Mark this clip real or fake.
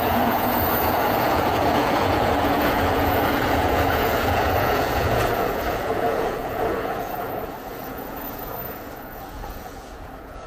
fake